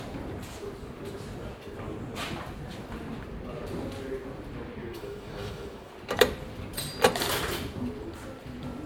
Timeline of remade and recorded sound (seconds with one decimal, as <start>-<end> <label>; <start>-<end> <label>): 0.0-4.8 recorded; 4.8-5.9 remade; 5.9-8.9 recorded